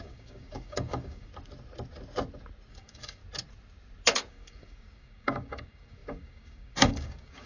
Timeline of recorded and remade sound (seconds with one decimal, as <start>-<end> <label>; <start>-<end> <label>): 0.0-1.3 remade; 1.3-2.7 recorded; 2.7-3.2 remade; 3.2-4.3 recorded; 4.3-7.5 remade